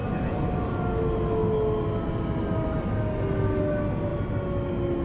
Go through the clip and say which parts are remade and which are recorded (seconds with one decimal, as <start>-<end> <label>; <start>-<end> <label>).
0.0-5.0 recorded